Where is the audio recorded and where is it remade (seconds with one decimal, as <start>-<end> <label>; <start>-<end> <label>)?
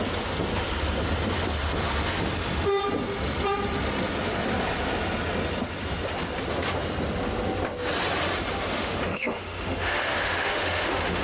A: 0.0-8.7 recorded; 8.7-11.2 remade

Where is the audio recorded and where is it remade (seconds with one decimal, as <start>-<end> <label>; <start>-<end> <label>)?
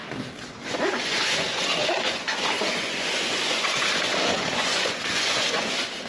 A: 0.0-0.5 recorded; 0.5-6.1 remade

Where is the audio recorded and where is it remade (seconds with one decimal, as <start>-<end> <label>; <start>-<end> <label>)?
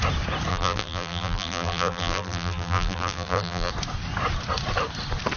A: 0.0-0.5 recorded; 0.5-3.7 remade; 3.7-5.4 recorded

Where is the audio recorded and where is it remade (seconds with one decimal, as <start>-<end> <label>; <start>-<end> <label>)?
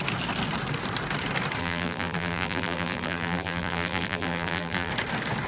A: 0.0-1.6 recorded; 1.6-4.9 remade; 4.9-5.5 recorded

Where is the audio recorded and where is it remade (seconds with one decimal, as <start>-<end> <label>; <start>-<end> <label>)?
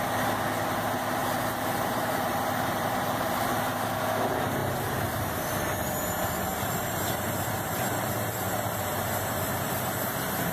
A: 0.0-1.2 recorded; 1.2-3.7 remade; 3.7-4.6 recorded; 4.6-5.4 remade; 5.4-6.5 recorded; 6.5-7.8 remade; 7.8-10.5 recorded